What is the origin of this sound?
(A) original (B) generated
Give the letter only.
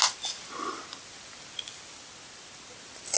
A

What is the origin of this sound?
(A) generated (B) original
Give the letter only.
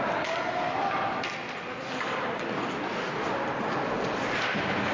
B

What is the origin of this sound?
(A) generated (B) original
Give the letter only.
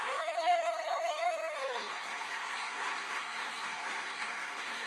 A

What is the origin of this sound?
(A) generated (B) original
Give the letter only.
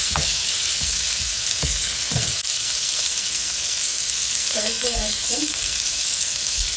A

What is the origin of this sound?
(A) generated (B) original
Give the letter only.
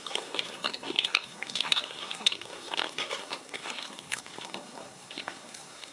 A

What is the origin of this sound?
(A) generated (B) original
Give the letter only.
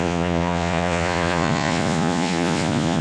A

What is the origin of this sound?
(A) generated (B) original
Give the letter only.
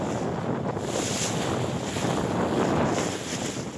B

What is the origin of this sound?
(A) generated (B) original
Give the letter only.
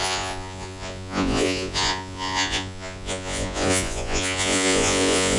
A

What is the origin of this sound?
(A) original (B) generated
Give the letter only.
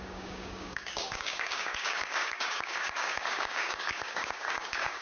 B